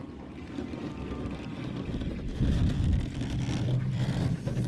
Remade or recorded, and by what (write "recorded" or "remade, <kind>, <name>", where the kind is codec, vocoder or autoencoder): recorded